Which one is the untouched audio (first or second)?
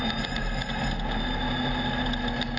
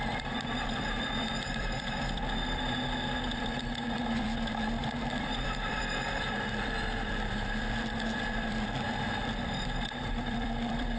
first